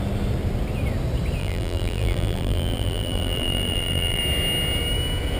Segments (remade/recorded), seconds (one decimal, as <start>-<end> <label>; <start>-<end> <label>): 0.0-1.4 recorded; 1.4-4.2 remade; 4.2-5.4 recorded